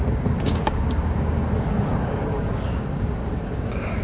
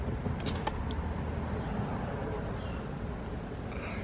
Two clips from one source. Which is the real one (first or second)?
second